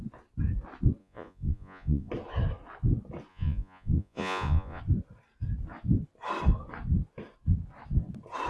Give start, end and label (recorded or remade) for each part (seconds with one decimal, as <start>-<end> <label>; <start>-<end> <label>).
0.0-1.0 recorded; 1.0-2.1 remade; 2.1-3.3 recorded; 3.3-4.8 remade; 4.8-8.5 recorded